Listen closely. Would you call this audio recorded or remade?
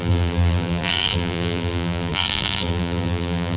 remade